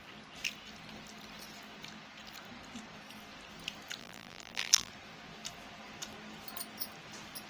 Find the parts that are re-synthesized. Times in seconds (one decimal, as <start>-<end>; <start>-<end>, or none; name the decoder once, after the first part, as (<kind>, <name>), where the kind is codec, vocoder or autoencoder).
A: 4.0-4.9 (vocoder, BigVGAN v2)